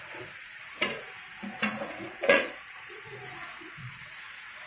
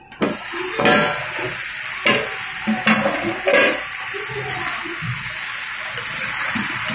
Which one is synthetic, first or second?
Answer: first